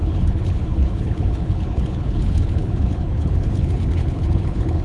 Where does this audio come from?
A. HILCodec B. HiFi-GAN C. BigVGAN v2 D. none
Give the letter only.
A